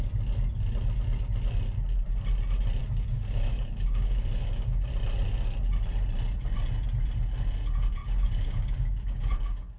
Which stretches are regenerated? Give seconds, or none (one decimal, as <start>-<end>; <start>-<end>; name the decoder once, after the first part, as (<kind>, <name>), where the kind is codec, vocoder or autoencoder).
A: 2.8-4.9 (codec, DAC); 8.0-9.8